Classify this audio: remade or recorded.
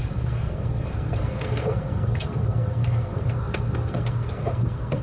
remade